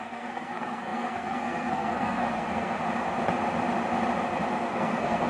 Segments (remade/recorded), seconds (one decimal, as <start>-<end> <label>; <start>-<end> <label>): 0.0-2.8 remade; 2.8-4.5 recorded; 4.5-5.3 remade